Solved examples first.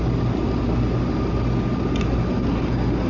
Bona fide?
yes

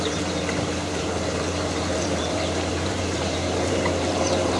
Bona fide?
no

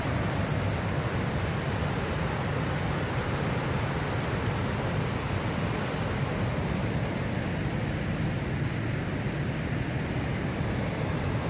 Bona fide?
yes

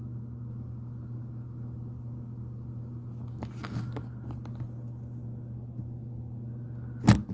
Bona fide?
yes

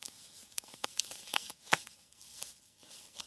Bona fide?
no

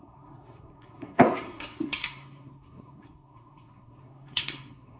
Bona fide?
no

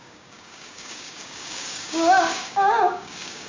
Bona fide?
no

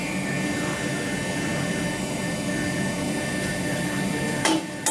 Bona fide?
yes